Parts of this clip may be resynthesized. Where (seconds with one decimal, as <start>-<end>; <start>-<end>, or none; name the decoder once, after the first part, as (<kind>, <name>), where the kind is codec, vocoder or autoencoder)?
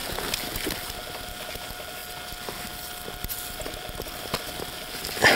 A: 1.5-2.0 (vocoder, BigVGAN v2); 3.5-5.4